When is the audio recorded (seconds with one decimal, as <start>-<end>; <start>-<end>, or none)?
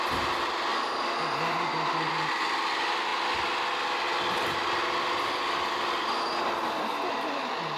0.0-7.8